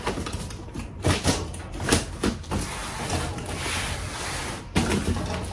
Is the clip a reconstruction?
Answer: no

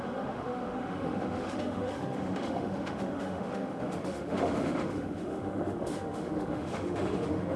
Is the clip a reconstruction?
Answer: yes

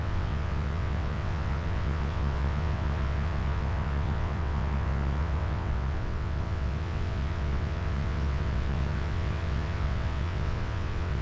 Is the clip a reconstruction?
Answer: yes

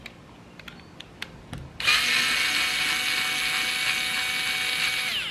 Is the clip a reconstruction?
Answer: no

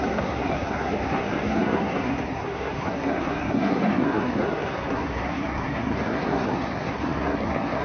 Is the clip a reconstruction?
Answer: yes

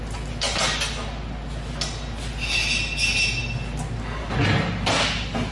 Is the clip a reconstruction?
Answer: no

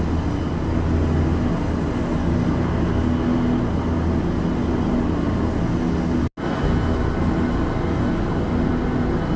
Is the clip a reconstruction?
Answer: no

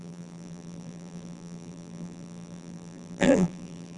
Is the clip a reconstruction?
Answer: yes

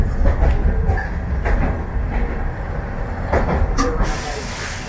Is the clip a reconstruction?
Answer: no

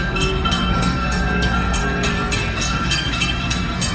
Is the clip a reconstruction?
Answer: yes